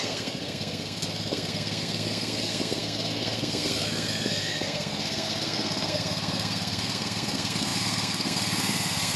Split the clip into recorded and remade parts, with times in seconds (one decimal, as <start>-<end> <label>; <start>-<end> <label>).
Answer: 0.0-9.2 remade